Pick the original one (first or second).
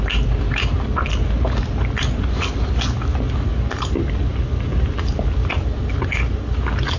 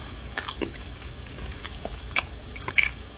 first